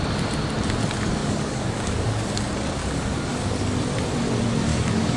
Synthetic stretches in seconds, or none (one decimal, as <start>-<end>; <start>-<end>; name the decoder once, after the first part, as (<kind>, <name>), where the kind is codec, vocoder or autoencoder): 1.2-2.4 (codec, DAC); 2.8-3.5; 4.7-5.2